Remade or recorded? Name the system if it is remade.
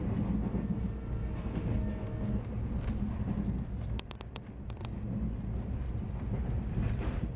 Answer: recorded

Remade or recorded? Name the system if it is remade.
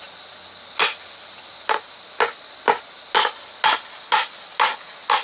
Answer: recorded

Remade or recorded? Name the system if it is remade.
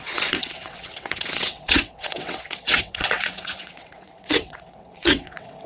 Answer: remade, vocoder, WaveNeXt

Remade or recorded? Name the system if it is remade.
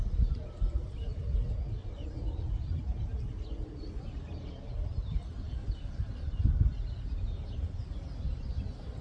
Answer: recorded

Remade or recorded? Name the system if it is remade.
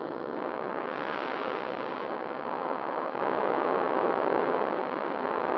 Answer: remade, vocoder, WaveNeXt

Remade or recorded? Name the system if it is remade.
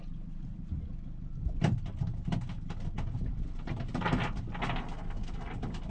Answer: recorded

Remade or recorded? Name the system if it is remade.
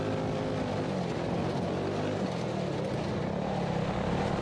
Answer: recorded